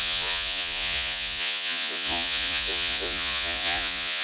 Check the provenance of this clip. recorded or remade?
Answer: remade